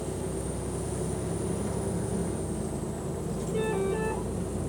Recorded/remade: recorded